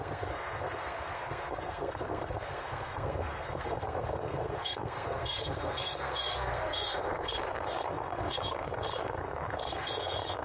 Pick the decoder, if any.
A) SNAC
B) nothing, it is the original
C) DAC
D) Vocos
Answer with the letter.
A